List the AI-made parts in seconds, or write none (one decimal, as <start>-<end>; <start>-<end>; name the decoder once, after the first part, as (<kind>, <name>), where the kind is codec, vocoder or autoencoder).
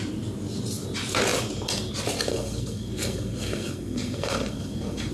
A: 2.3-5.1 (codec, SNAC)